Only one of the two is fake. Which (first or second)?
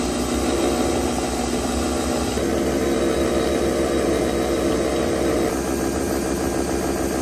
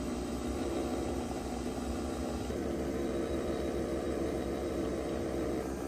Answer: second